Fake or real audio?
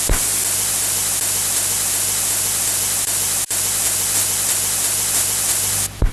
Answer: real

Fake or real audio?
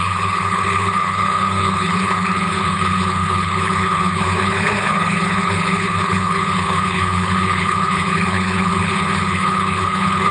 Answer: fake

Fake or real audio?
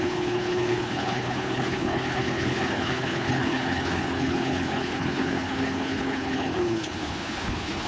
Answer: fake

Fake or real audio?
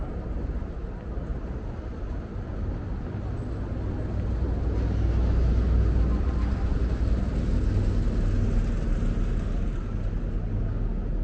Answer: real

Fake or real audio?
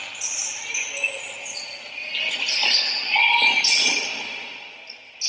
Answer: real